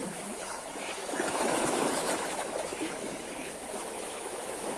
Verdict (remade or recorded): remade